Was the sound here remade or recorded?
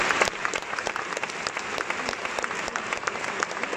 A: remade